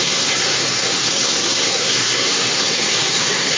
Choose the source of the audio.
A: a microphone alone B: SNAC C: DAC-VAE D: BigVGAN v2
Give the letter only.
B